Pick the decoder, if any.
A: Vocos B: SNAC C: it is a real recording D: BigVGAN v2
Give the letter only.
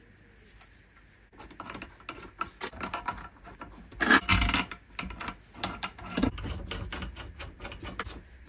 C